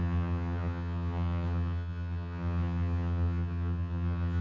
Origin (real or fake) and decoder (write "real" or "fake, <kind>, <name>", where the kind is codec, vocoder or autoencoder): fake, vocoder, HiFi-GAN